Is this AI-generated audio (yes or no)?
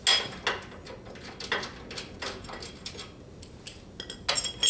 no